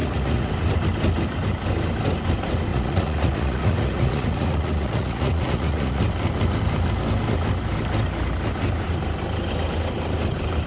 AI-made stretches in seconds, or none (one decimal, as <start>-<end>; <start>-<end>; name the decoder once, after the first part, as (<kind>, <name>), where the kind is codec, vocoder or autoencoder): 0.0-0.5 (vocoder, Vocos); 2.7-6.0